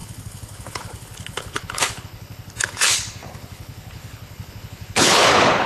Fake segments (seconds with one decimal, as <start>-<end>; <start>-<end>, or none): 0.0-5.7